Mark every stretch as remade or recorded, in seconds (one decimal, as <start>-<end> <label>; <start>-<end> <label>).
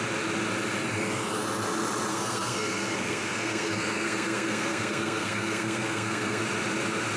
0.0-2.1 recorded; 2.1-6.4 remade; 6.4-7.2 recorded